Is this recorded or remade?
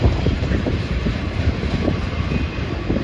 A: remade